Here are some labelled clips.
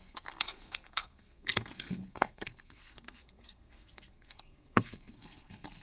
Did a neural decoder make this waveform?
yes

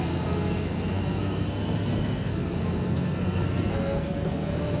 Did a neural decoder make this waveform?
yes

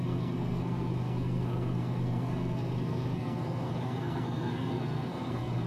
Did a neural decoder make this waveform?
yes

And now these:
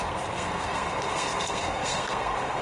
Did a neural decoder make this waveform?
yes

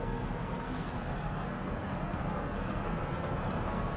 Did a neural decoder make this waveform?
yes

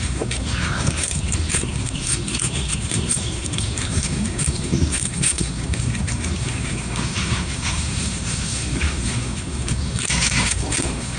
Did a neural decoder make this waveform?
yes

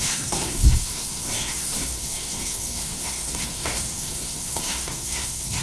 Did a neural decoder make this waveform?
yes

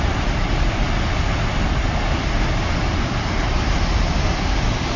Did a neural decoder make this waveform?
no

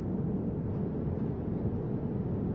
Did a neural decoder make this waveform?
no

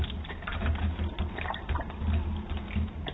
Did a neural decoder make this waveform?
no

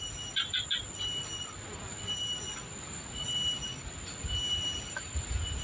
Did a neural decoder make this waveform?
no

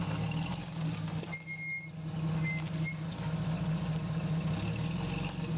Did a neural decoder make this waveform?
no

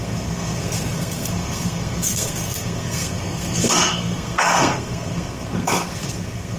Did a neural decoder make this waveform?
yes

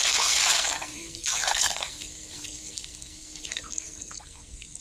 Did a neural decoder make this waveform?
yes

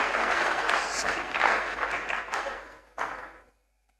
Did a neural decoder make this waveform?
yes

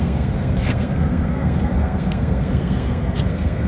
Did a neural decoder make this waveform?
yes